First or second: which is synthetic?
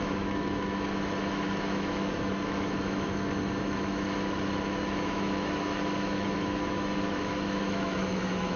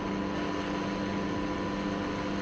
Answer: first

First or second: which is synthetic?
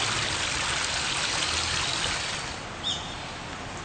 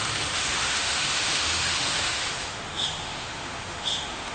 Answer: second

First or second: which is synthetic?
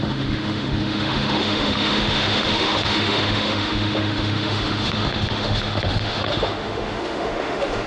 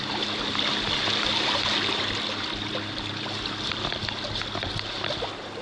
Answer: first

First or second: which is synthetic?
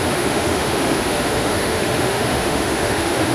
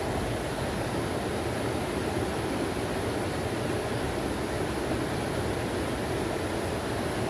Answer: first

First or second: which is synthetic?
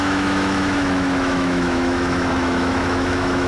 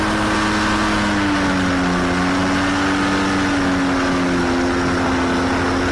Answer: first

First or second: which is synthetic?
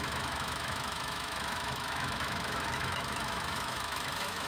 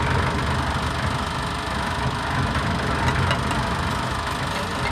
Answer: first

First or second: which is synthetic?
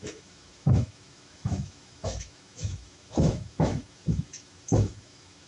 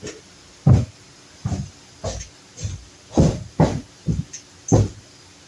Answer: first